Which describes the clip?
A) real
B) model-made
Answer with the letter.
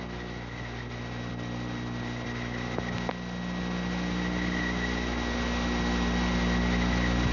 A